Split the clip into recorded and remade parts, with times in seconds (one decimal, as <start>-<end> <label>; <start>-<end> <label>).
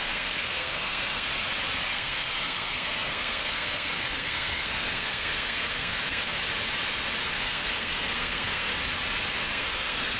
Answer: 0.0-1.3 remade; 1.3-1.9 recorded; 1.9-6.4 remade; 6.4-7.3 recorded; 7.3-8.7 remade; 8.7-9.5 recorded; 9.5-10.2 remade